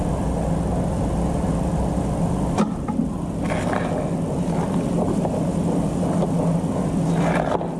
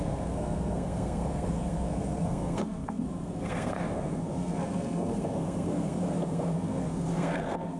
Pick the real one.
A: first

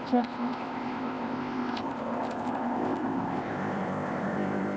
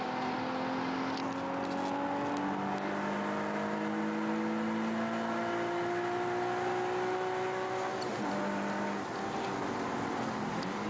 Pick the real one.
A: second